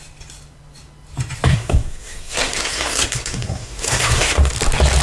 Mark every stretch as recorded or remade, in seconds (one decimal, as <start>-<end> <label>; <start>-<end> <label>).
0.0-1.5 recorded; 1.5-4.5 remade; 4.5-5.0 recorded